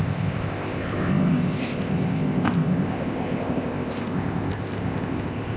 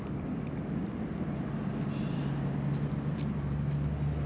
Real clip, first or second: second